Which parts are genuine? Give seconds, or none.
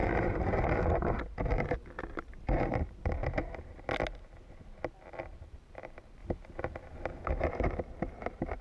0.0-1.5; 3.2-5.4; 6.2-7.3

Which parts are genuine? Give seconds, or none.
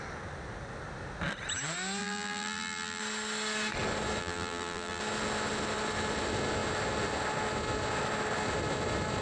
0.0-2.0; 3.0-4.2; 5.0-9.2